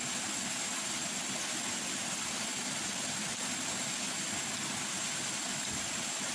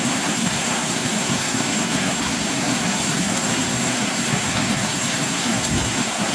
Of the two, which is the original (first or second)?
first